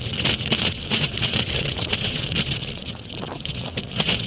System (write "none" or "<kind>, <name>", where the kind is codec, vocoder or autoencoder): vocoder, WaveNeXt